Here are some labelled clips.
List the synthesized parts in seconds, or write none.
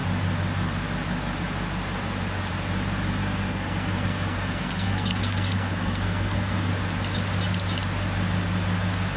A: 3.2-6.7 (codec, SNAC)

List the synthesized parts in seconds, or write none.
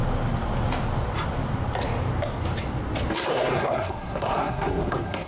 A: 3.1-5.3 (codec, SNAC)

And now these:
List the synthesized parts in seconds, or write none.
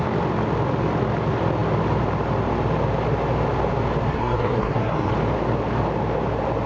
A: 4.1-5.1 (codec, SNAC)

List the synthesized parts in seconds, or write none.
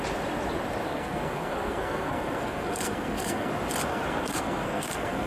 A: 0.9-3.5 (codec, SNAC); 3.9-5.3